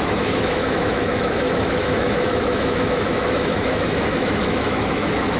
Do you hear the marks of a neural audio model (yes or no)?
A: yes